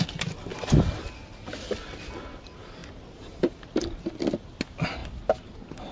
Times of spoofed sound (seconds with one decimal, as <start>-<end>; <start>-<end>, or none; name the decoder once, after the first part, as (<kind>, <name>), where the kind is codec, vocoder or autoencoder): none